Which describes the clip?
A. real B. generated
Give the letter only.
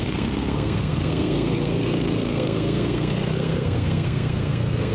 B